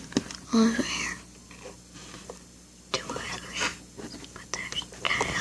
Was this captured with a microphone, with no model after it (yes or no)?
yes